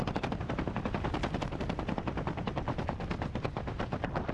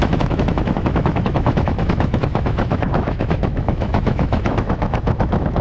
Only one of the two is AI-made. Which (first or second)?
second